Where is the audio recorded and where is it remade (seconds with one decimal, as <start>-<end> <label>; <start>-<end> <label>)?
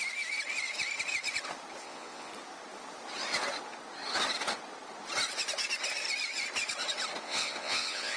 0.0-1.8 recorded; 1.8-2.3 remade; 2.3-7.2 recorded; 7.2-8.2 remade